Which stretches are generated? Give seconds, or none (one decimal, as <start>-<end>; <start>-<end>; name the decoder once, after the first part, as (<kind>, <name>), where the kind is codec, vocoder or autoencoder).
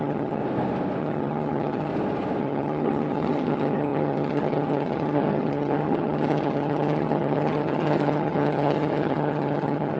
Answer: 0.0-0.4 (vocoder, HiFi-GAN); 1.0-1.9; 2.4-10.0